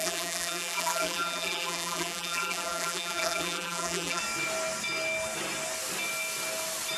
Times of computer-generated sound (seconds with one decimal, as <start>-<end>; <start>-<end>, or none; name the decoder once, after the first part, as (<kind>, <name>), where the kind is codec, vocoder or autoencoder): 0.0-4.2 (vocoder, BigVGAN v2)